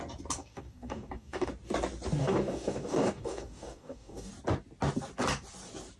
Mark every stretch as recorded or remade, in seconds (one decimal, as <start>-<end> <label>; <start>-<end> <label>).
0.0-0.4 recorded; 0.4-1.5 remade; 1.5-2.2 recorded; 2.2-4.3 remade; 4.3-6.0 recorded